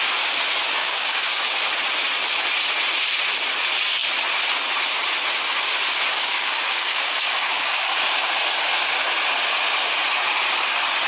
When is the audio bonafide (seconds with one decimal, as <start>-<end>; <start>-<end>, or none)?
0.0-0.8; 1.4-6.1; 8.0-11.1